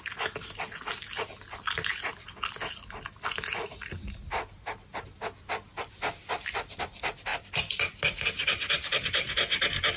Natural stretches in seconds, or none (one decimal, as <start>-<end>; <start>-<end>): 0.0-10.0

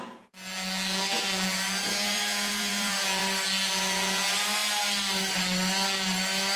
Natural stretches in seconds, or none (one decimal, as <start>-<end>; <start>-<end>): 3.2-3.7; 4.6-6.6

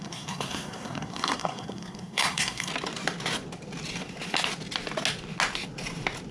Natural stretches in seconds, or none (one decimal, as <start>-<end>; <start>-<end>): 2.7-6.3